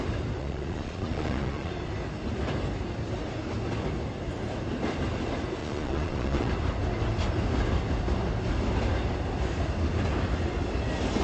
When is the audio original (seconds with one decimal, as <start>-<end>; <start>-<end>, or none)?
0.0-0.4; 1.7-5.6; 6.5-11.2